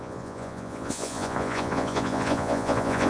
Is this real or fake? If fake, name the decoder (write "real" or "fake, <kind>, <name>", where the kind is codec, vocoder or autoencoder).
fake, vocoder, Vocos